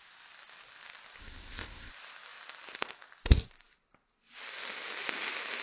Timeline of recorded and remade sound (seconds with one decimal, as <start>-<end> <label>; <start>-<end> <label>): 0.0-1.2 recorded; 1.2-1.9 remade; 1.9-5.6 recorded